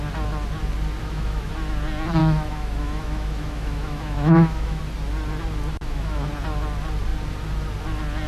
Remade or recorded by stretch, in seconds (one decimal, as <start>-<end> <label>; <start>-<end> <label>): 0.0-1.0 recorded; 1.0-1.5 remade; 1.5-2.2 recorded; 2.2-4.8 remade; 4.8-5.7 recorded; 5.7-6.3 remade; 6.3-8.3 recorded